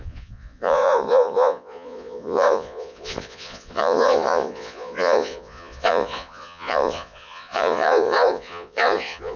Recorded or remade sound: remade